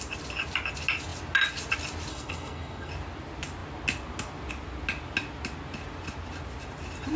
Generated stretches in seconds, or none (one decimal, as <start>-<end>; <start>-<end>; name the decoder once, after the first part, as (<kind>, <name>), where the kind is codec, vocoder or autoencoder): 2.1-2.9 (codec, SNAC)